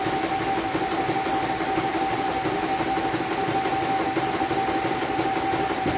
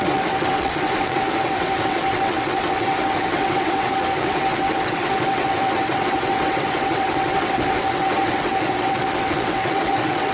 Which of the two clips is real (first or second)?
first